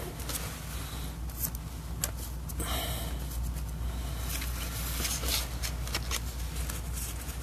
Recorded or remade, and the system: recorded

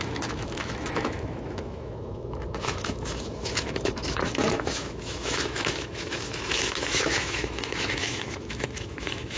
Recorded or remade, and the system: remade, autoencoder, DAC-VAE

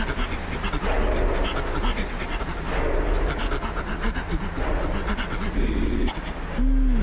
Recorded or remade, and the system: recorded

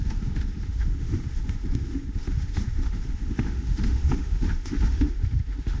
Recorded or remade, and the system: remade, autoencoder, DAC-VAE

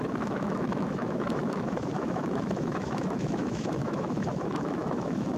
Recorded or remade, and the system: remade, autoencoder, DAC-VAE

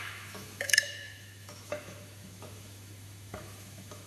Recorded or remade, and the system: remade, autoencoder, DAC-VAE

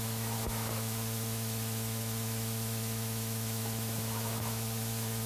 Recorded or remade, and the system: remade, autoencoder, DAC-VAE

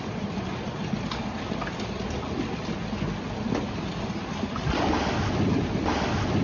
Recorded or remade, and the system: recorded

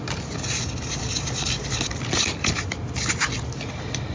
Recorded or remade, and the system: recorded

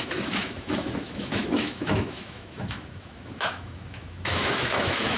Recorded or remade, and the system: remade, autoencoder, DAC-VAE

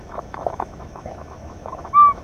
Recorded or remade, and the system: remade, autoencoder, DAC-VAE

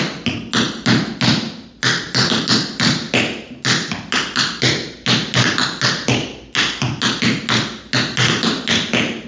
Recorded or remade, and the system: recorded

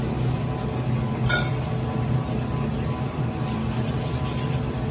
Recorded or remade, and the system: recorded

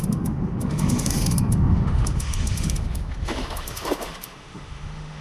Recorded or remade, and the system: remade, autoencoder, DAC-VAE